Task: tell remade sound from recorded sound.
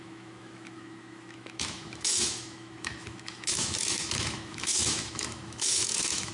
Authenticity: remade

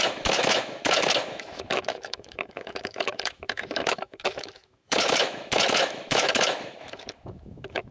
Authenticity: remade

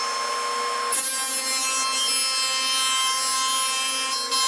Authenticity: recorded